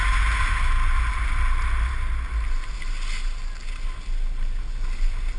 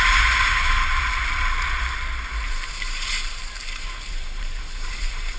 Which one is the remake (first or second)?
second